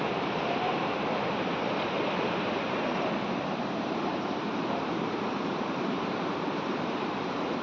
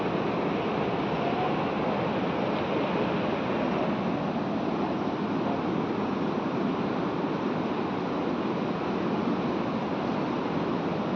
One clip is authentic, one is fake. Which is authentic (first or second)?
second